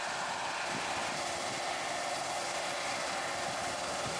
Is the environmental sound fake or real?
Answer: real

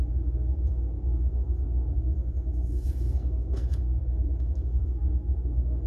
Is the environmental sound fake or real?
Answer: fake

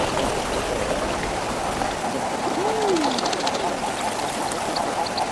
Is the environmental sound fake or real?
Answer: real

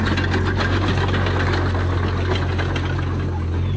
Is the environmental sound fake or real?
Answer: real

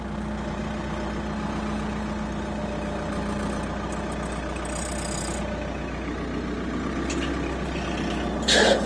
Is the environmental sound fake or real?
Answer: real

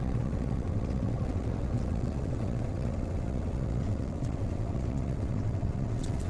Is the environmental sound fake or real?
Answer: fake